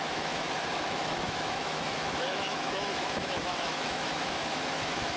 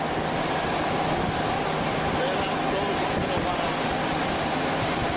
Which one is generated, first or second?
first